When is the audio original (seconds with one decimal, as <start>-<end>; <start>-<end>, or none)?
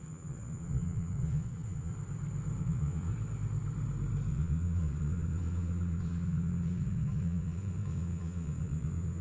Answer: 1.9-2.6; 3.1-4.3